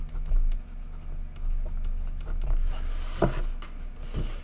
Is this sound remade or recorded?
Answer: recorded